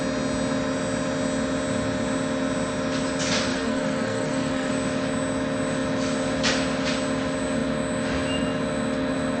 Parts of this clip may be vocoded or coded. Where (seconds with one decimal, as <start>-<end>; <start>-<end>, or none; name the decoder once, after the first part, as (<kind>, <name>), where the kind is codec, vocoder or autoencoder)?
3.5-4.7 (codec, SNAC)